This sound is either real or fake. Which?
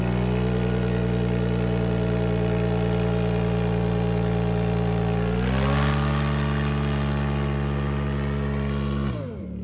real